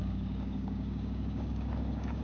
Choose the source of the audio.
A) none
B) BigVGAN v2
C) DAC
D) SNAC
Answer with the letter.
C